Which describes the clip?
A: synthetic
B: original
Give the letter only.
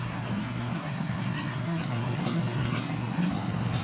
A